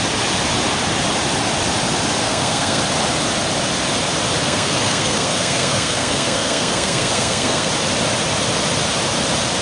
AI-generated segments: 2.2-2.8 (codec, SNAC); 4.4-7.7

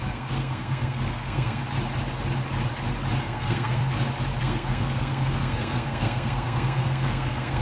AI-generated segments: 0.0-1.6 (codec, SNAC); 3.2-3.8; 4.4-7.6

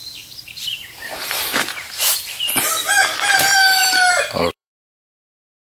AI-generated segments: 0.7-2.7 (vocoder, BigVGAN v2); 3.8-4.7

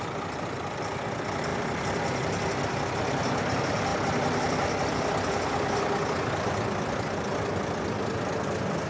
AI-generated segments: none

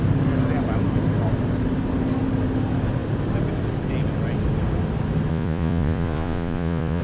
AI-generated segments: 5.3-7.0 (vocoder, Vocos)

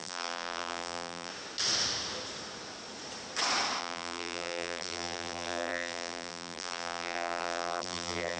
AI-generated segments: 0.0-1.3 (vocoder, BigVGAN v2); 3.8-8.4

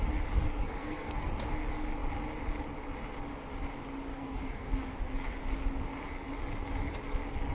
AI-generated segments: 0.6-1.3 (codec, SNAC); 4.1-4.7